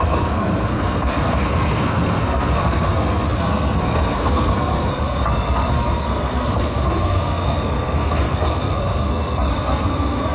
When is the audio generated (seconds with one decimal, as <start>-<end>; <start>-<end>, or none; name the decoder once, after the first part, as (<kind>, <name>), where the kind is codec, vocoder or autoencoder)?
0.0-10.3 (codec, SNAC)